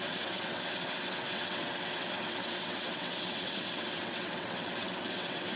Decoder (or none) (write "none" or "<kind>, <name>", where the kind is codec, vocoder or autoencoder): vocoder, WaveNeXt